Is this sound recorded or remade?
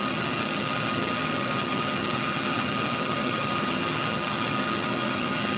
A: remade